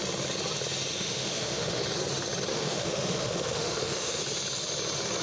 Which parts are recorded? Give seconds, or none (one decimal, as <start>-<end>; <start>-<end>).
0.0-0.9; 1.8-2.5; 4.2-5.2